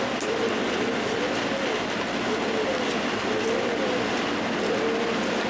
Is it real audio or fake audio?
real